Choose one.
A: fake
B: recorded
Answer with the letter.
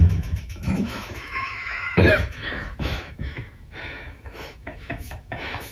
A